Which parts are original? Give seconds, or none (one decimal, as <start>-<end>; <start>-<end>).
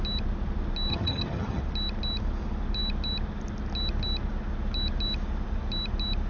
0.0-0.9; 1.6-6.3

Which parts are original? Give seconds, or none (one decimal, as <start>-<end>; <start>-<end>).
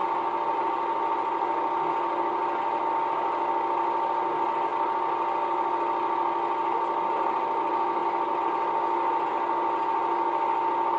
0.0-11.0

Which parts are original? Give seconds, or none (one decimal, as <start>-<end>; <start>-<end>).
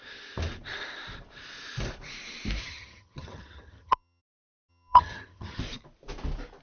0.0-2.6; 4.2-4.7; 5.6-6.6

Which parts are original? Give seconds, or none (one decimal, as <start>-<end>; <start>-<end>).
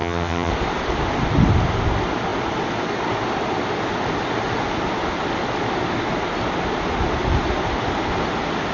0.5-8.7